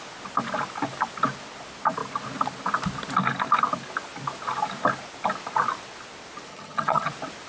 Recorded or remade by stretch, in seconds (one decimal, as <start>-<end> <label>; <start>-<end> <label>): 0.0-6.5 recorded; 6.5-7.1 remade; 7.1-7.5 recorded